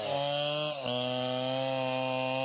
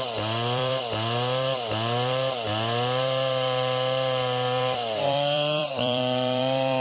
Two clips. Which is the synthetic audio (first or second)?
second